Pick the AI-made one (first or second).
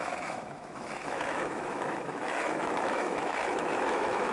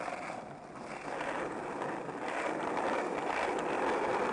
first